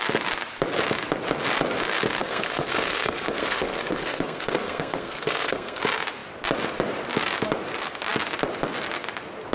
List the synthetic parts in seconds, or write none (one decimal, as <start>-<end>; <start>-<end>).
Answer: 2.2-5.8